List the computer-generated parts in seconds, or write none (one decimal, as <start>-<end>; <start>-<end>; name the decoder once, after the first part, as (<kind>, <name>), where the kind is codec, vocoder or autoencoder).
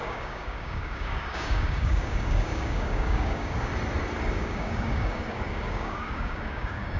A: 0.0-3.7 (codec, DAC); 4.3-7.0